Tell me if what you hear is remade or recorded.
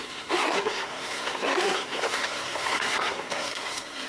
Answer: remade